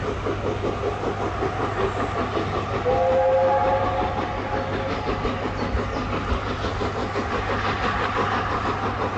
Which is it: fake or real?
real